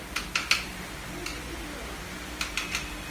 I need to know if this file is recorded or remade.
recorded